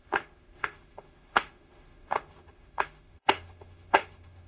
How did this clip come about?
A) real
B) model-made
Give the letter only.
B